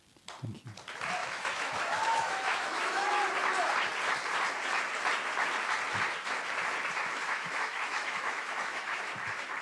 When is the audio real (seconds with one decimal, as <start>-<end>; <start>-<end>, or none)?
0.0-1.2; 3.2-7.0; 9.1-9.6